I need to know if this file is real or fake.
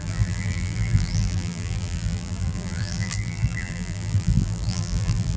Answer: fake